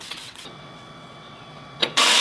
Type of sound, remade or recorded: remade